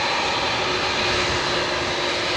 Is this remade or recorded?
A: recorded